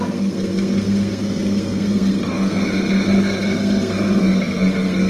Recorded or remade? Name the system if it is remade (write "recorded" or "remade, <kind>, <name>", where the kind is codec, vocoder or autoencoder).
remade, codec, SNAC